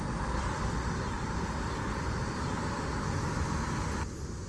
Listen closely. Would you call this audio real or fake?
real